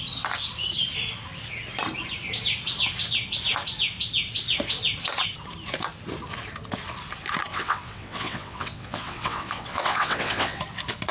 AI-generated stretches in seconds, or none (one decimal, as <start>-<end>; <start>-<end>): 7.5-10.6